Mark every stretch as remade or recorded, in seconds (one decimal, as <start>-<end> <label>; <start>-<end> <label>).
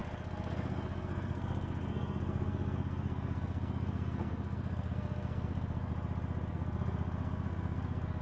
0.0-5.9 remade; 5.9-6.5 recorded; 6.5-8.2 remade